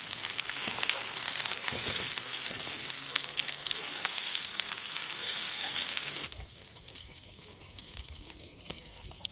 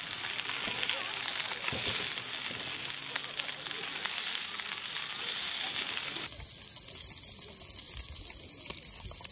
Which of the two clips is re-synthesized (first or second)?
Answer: first